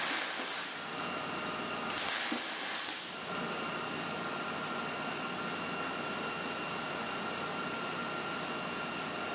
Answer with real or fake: real